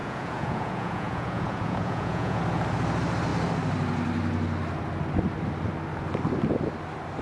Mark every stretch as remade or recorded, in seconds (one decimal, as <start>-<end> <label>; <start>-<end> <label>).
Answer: 0.0-2.4 remade; 2.4-7.2 recorded